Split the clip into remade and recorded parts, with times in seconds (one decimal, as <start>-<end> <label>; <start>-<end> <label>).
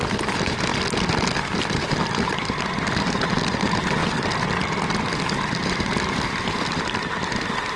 0.0-0.7 remade; 0.7-1.6 recorded; 1.6-4.0 remade; 4.0-6.5 recorded; 6.5-7.8 remade